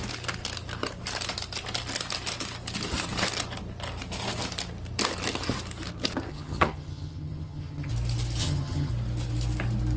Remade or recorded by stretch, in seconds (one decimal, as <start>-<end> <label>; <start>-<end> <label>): 0.0-6.3 recorded; 6.3-7.9 remade; 7.9-8.4 recorded; 8.4-8.9 remade; 8.9-10.0 recorded